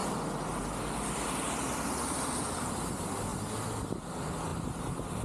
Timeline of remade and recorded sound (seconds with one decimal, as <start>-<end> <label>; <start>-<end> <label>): 0.0-5.2 recorded